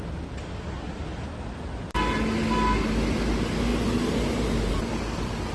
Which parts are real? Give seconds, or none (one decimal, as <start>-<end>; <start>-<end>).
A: 0.0-5.5

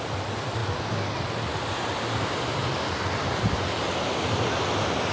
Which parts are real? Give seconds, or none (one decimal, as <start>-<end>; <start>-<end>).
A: 0.6-1.7

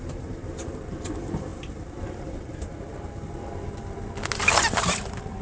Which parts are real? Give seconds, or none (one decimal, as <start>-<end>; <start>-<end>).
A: 2.7-4.7

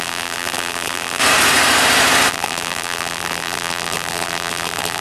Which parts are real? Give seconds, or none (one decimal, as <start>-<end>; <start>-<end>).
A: 1.2-2.3

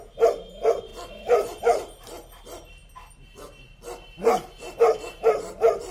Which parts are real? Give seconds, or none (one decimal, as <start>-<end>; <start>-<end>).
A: 0.0-0.9; 1.6-5.9

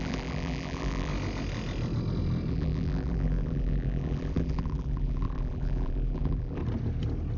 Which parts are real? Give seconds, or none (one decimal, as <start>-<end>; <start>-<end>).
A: 1.1-2.5; 6.6-7.4